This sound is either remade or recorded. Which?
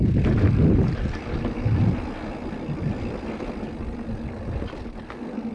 recorded